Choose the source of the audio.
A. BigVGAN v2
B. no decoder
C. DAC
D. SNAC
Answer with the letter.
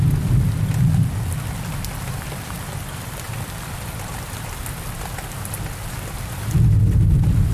B